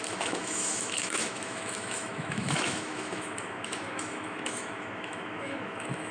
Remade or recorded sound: remade